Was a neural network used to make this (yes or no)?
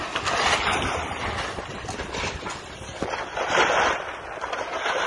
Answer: no